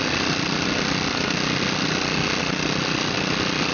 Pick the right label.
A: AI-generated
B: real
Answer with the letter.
B